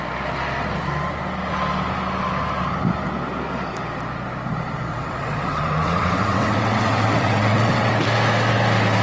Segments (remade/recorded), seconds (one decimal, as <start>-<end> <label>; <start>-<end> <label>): 0.0-4.9 recorded; 4.9-7.9 remade; 7.9-9.0 recorded